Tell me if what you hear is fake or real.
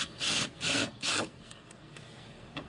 fake